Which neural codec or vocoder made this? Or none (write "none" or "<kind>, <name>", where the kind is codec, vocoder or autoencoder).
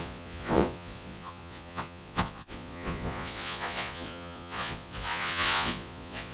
vocoder, Vocos